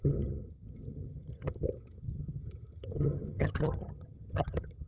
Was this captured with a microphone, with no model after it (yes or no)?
no